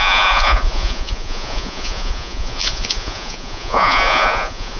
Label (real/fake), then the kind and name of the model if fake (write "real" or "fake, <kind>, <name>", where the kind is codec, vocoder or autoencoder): fake, vocoder, Vocos